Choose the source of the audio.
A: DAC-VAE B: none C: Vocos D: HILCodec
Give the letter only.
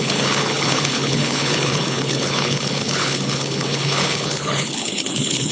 D